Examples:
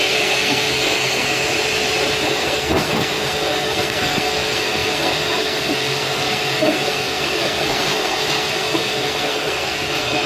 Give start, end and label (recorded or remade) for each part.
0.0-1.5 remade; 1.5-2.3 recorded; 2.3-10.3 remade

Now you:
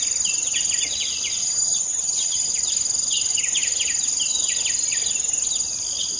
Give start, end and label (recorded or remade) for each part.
0.0-1.4 recorded; 1.4-2.5 remade; 2.5-6.2 recorded

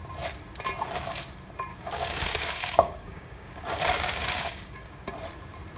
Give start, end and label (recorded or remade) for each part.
0.0-1.7 recorded; 1.7-5.1 remade; 5.1-5.8 recorded